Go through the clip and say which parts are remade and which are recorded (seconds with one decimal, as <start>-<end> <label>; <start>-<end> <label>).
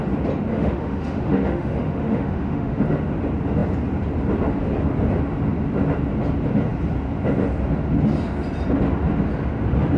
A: 0.0-0.5 recorded; 0.5-2.8 remade; 2.8-10.0 recorded